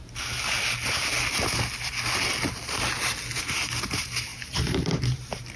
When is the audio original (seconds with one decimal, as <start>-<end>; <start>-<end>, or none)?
0.0-3.4